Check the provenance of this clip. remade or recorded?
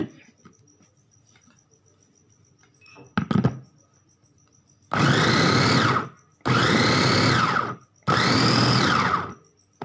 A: recorded